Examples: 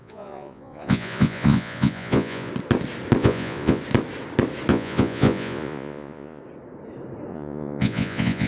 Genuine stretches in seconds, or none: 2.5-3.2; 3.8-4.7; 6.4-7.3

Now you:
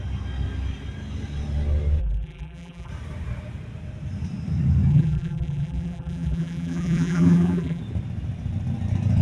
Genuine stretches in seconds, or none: 0.0-2.0; 2.9-4.9; 7.8-9.2